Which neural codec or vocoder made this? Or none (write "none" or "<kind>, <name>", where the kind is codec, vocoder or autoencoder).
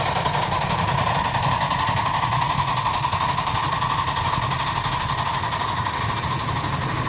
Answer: none